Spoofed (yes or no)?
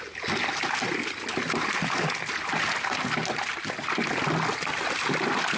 no